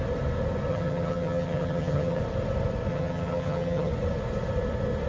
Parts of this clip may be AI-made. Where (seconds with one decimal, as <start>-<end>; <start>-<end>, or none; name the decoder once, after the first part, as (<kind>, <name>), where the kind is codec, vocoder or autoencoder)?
0.7-2.2 (vocoder, HiFi-GAN); 2.9-3.9